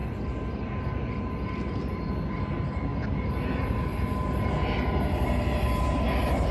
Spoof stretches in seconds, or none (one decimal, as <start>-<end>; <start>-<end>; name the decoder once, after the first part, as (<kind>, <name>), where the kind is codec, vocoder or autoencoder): none